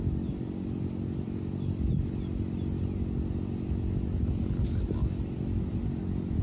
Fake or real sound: real